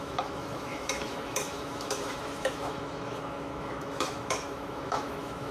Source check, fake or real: fake